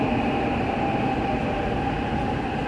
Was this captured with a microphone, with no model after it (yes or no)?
yes